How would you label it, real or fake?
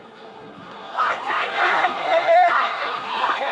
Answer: fake